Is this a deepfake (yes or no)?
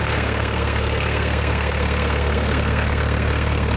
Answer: yes